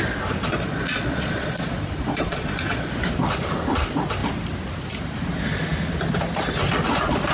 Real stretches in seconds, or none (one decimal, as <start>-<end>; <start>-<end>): 0.0-0.5; 2.9-7.3